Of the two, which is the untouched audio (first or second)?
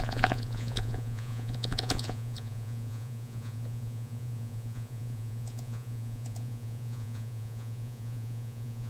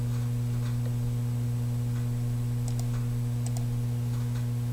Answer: second